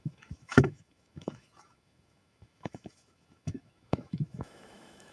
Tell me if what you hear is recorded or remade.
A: remade